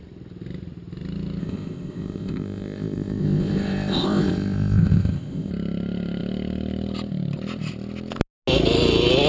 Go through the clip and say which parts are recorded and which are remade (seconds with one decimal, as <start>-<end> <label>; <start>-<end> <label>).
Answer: 0.0-1.4 recorded; 1.4-5.5 remade; 5.5-9.3 recorded